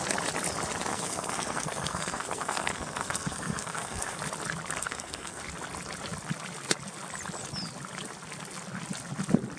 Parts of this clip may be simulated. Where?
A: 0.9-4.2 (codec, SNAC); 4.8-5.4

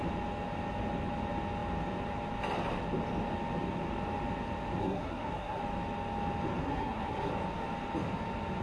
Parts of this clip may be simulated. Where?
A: 4.8-5.6 (codec, SNAC); 6.6-7.3

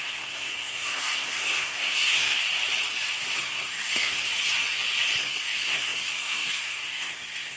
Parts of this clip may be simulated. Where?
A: 0.0-2.4 (codec, SNAC); 3.4-4.3; 5.2-7.6

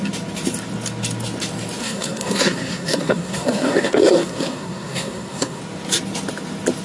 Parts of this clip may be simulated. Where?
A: 1.8-5.6 (codec, SNAC)

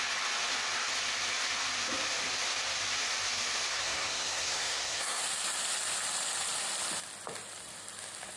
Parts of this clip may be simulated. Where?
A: 3.7-5.2 (codec, SNAC)